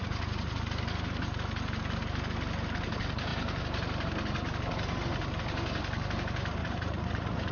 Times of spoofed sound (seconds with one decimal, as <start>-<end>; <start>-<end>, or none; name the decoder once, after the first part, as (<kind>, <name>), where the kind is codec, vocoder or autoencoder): 0.0-0.6 (vocoder, Vocos); 6.6-7.5